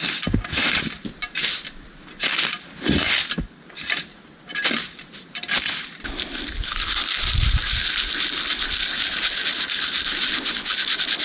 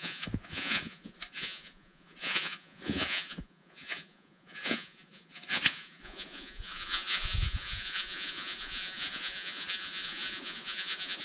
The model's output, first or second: second